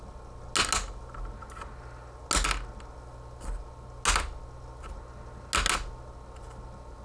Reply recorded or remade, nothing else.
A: recorded